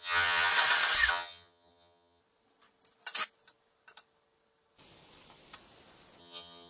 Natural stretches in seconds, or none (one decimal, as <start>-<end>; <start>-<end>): 0.5-1.1; 2.2-6.2